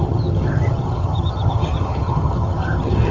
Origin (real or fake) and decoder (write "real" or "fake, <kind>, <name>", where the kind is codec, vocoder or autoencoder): fake, vocoder, HiFi-GAN